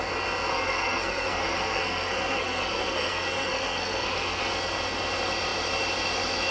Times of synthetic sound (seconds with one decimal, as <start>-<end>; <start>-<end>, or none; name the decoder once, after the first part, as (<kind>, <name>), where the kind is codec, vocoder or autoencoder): 0.5-4.4 (codec, SNAC)